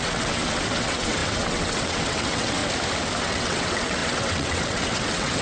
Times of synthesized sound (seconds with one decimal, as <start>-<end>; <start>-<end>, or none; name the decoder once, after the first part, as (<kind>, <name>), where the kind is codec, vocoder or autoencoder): 0.0-2.6 (vocoder, WaveNeXt); 3.2-5.4